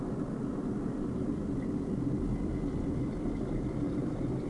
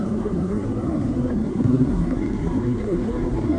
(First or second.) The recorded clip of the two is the first